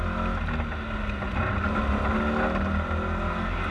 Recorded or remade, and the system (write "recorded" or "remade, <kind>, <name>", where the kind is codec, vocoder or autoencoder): recorded